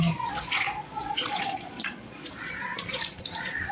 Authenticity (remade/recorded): remade